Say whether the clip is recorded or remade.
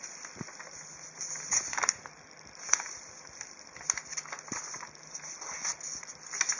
recorded